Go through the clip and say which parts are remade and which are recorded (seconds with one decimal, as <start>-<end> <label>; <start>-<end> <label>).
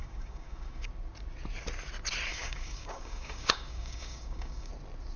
0.0-0.9 remade; 0.9-2.3 recorded; 2.3-4.7 remade; 4.7-5.2 recorded